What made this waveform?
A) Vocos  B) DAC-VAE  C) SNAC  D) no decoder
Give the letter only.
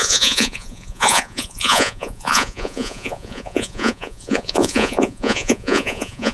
A